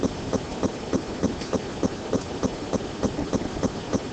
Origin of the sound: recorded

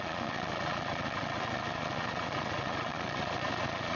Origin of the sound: remade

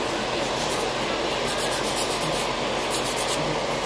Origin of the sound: recorded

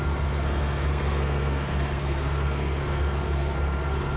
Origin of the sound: remade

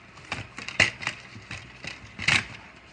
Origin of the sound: recorded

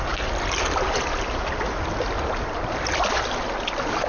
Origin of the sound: recorded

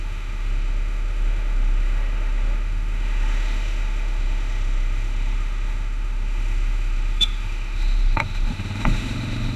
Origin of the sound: remade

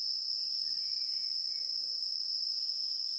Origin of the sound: recorded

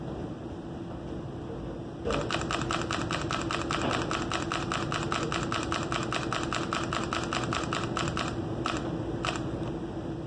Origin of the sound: recorded